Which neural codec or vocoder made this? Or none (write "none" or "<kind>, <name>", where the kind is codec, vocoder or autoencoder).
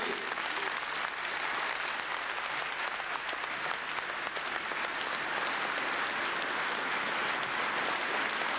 none